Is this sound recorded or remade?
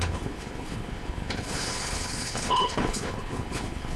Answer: remade